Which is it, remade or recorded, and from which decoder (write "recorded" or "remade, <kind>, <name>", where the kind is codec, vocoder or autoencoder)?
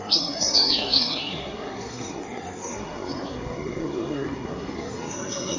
remade, codec, SNAC